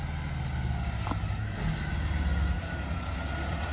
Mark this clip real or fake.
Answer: real